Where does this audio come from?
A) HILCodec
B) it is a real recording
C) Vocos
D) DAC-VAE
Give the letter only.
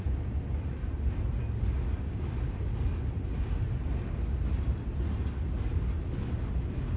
B